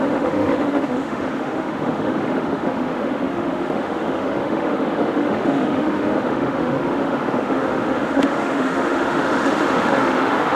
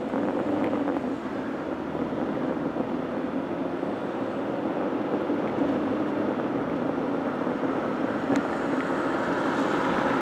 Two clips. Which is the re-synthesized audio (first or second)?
first